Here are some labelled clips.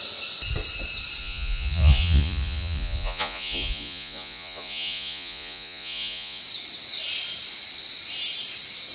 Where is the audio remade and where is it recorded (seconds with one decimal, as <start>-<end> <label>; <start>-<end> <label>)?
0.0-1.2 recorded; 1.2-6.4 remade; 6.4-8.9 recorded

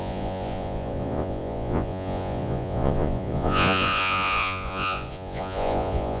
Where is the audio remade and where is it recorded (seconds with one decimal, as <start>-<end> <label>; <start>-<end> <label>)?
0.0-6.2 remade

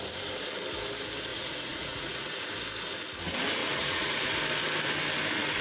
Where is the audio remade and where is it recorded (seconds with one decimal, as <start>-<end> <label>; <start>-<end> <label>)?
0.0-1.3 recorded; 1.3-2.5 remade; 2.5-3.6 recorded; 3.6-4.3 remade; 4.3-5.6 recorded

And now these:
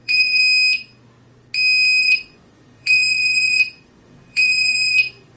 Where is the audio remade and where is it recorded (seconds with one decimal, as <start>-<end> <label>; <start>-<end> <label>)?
0.0-0.4 remade; 0.4-2.0 recorded; 2.0-5.4 remade

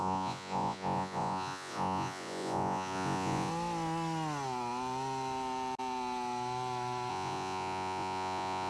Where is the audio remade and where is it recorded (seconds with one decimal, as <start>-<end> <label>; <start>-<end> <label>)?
0.0-3.5 remade; 3.5-7.1 recorded; 7.1-8.7 remade

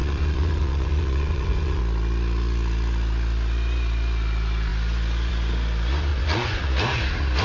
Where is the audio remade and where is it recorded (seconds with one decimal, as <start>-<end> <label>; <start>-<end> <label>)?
0.0-1.8 remade; 1.8-6.1 recorded; 6.1-6.7 remade; 6.7-7.4 recorded